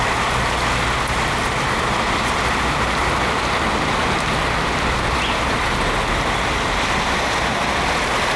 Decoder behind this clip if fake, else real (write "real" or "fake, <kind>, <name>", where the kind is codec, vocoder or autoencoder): real